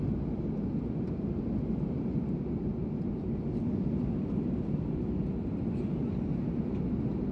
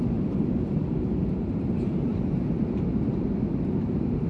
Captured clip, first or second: first